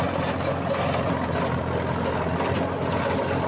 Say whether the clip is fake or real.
real